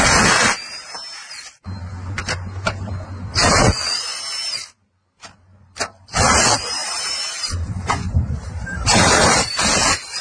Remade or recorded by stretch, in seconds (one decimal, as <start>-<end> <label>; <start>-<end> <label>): 0.0-2.2 recorded; 2.2-2.9 remade; 2.9-6.8 recorded; 6.8-9.6 remade; 9.6-10.2 recorded